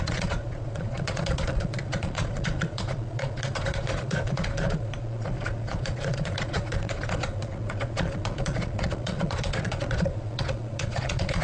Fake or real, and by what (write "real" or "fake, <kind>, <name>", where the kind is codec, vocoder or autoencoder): fake, vocoder, Vocos